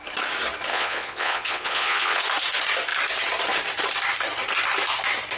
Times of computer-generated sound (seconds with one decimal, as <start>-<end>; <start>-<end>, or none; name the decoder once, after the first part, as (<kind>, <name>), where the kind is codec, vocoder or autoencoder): 0.7-2.2 (vocoder, Vocos)

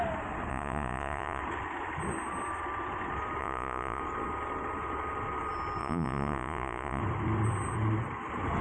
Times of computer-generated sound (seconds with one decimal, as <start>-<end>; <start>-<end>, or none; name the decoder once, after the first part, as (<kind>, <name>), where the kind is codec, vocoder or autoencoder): 0.5-1.4 (vocoder, Vocos); 3.4-4.0; 5.8-7.0